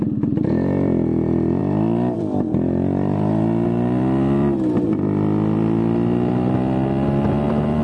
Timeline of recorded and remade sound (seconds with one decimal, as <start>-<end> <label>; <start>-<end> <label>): 0.0-1.6 remade; 1.6-2.2 recorded; 2.2-7.8 remade